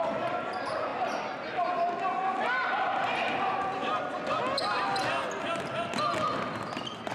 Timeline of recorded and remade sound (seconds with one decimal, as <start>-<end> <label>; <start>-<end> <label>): 0.0-7.1 recorded

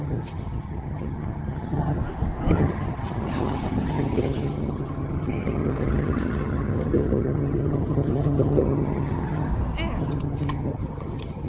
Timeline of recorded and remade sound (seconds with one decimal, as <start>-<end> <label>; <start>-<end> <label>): 0.0-2.0 remade; 2.0-2.5 recorded; 2.5-9.5 remade; 9.5-10.0 recorded; 10.0-11.5 remade

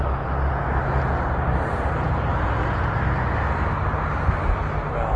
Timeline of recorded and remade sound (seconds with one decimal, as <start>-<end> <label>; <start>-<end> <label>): 0.0-5.2 recorded

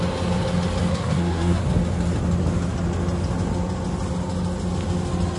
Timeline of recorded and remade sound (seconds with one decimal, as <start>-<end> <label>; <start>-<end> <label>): 0.0-0.9 recorded; 0.9-1.6 remade; 1.6-5.4 recorded

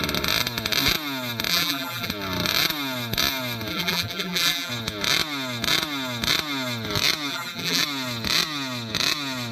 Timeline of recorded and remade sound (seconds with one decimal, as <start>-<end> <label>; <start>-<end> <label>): 0.0-1.5 recorded; 1.5-2.1 remade; 2.1-3.7 recorded; 3.7-4.7 remade; 4.7-7.3 recorded; 7.3-7.8 remade; 7.8-9.5 recorded

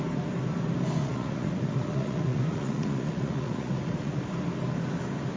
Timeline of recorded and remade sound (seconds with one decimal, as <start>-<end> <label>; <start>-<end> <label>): 0.0-1.0 recorded; 1.0-4.2 remade; 4.2-5.4 recorded

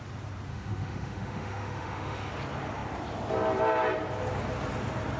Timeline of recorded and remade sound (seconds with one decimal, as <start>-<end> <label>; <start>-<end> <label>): 0.0-0.5 recorded; 0.5-2.3 remade; 2.3-5.2 recorded

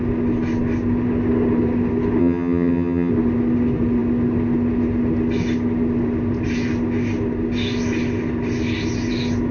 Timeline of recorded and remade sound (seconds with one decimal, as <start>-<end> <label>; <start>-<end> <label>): 0.0-2.2 recorded; 2.2-3.1 remade; 3.1-9.5 recorded